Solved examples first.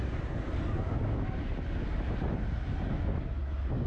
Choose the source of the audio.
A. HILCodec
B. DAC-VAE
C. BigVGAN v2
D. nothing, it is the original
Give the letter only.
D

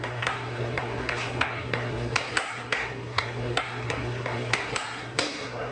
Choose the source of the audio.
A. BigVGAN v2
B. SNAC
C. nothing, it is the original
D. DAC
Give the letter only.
B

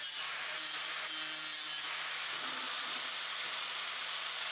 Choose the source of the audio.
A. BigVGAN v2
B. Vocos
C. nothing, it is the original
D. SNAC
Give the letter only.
C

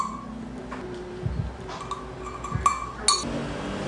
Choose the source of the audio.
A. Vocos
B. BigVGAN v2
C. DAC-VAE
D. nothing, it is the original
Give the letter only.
D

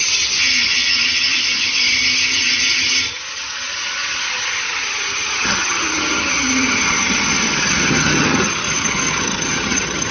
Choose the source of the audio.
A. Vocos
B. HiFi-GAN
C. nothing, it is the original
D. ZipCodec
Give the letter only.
B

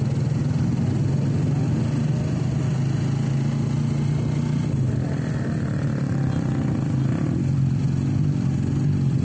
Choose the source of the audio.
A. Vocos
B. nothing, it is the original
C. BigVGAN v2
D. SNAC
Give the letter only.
B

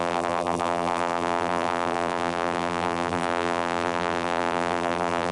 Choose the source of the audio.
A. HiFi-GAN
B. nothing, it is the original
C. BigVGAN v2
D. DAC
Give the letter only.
C